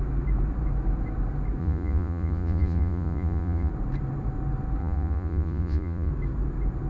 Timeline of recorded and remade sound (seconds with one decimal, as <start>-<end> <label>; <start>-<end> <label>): 0.0-1.6 recorded; 1.6-3.7 remade; 3.7-4.8 recorded; 4.8-6.1 remade; 6.1-6.9 recorded